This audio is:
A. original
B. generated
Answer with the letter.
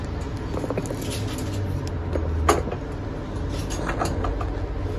A